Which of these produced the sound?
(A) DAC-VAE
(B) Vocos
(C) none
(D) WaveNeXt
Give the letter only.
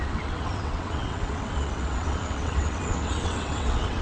D